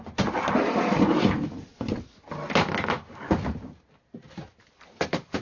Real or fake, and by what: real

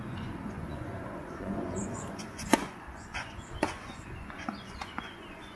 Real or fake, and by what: fake, vocoder, Vocos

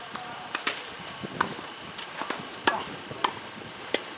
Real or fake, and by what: real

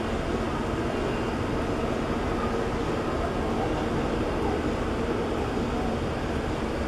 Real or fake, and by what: real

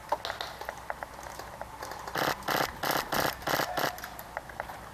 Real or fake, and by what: real